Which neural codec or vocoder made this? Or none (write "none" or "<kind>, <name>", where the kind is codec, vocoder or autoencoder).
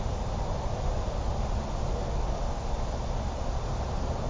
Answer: none